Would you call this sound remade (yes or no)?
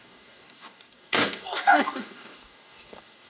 yes